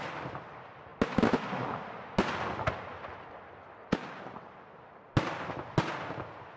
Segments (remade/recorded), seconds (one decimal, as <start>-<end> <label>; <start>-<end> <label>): 0.0-6.6 recorded